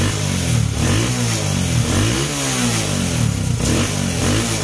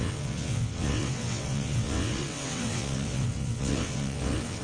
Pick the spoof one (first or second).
second